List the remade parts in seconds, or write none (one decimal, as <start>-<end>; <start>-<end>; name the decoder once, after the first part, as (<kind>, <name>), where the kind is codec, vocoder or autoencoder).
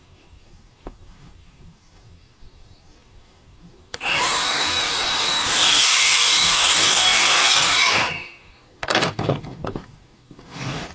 0.0-10.9 (codec, DAC)